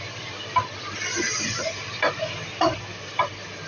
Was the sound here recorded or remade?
recorded